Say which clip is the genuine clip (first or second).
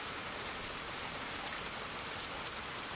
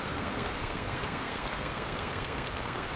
first